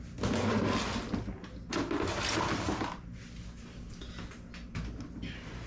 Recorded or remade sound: recorded